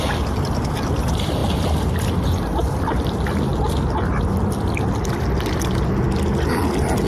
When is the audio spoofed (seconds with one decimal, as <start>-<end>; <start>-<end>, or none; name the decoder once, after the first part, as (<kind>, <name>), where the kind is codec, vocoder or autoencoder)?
none

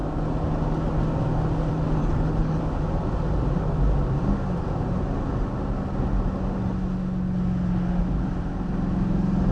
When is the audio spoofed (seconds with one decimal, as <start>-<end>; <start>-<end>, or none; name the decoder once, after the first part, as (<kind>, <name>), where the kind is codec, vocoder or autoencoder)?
2.0-2.6 (codec, HILCodec)